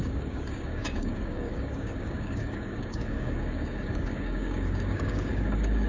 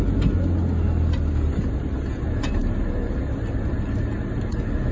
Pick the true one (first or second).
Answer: second